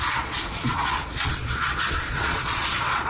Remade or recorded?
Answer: remade